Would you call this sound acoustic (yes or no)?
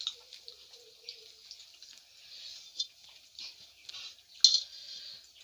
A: yes